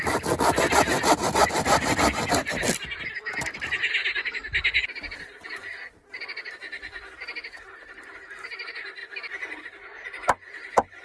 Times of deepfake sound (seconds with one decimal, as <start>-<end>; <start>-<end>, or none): none